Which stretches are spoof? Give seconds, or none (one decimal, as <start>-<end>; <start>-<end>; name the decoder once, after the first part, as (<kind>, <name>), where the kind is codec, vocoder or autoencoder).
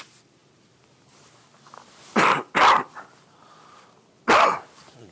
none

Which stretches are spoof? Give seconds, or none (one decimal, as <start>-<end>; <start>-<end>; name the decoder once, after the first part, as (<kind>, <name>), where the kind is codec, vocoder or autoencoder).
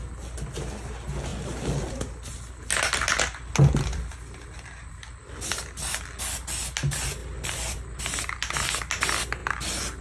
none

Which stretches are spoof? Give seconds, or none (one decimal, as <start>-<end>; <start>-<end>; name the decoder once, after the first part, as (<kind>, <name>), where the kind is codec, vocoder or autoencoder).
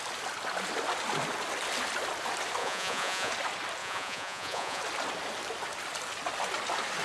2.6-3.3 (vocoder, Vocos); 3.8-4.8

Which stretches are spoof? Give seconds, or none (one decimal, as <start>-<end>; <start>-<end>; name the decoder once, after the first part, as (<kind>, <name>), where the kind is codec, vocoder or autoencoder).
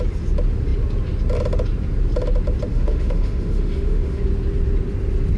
2.7-4.2 (autoencoder, DAC-VAE)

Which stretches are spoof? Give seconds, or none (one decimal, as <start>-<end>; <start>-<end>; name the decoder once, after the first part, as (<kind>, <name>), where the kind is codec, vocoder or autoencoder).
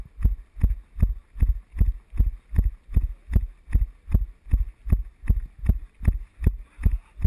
none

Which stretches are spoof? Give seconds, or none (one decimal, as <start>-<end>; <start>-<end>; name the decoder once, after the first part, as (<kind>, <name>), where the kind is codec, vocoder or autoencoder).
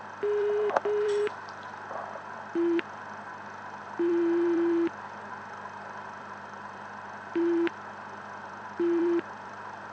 0.0-3.3 (vocoder, BigVGAN v2); 3.8-9.9